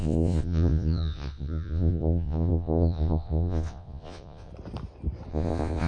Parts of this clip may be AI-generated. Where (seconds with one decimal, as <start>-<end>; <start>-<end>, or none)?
0.0-4.5; 5.3-5.9